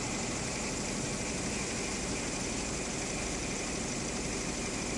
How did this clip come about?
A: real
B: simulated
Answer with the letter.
A